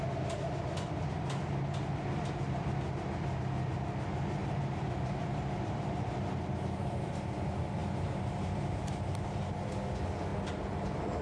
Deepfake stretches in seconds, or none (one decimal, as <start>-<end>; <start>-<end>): 4.4-7.1; 7.8-9.7